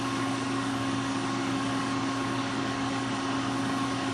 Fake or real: fake